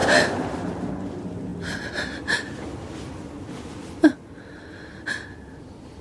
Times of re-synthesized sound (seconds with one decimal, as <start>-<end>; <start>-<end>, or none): 0.0-0.9